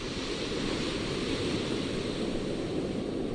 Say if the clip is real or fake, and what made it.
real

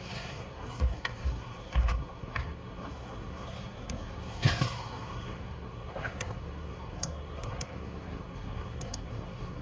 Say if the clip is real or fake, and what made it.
fake, codec, SNAC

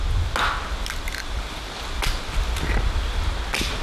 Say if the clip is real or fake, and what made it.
real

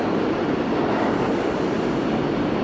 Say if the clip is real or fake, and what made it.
real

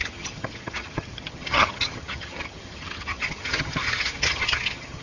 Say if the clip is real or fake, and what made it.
fake, vocoder, HiFi-GAN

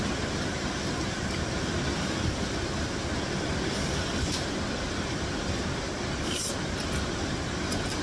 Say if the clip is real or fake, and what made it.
real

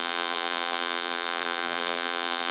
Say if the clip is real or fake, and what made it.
fake, vocoder, BigVGAN v2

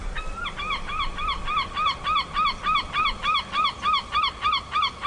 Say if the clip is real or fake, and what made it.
real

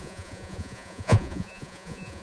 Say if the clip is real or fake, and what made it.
fake, vocoder, Vocos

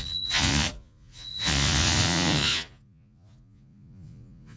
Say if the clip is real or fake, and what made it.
fake, vocoder, Vocos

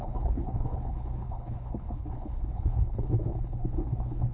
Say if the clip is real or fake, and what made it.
fake, codec, HILCodec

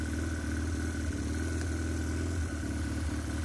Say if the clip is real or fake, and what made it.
real